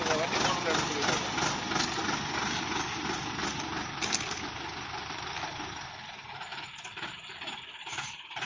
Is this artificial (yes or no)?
no